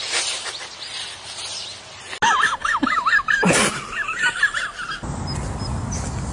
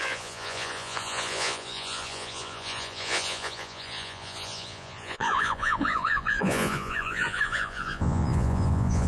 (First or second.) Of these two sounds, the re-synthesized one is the second